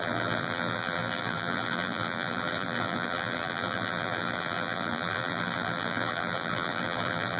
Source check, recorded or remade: remade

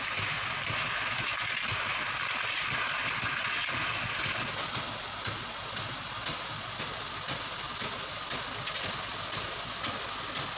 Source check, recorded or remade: recorded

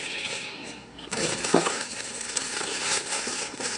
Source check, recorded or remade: remade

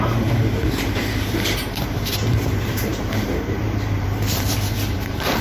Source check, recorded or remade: remade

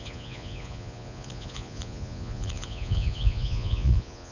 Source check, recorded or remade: remade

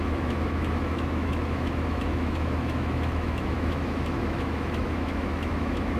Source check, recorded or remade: remade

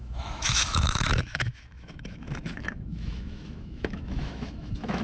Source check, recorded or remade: remade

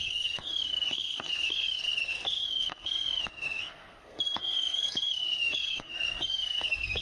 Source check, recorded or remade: remade